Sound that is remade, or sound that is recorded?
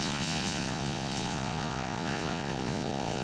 remade